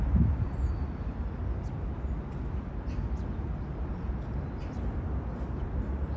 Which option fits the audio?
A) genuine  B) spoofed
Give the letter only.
A